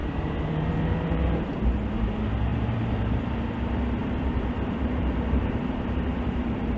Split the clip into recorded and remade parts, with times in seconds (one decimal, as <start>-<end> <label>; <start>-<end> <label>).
0.0-1.5 remade; 1.5-2.5 recorded; 2.5-3.4 remade; 3.4-4.0 recorded; 4.0-6.8 remade